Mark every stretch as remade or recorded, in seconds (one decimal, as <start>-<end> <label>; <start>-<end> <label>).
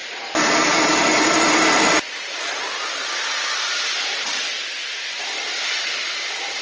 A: 0.0-4.0 remade; 4.0-4.8 recorded; 4.8-6.6 remade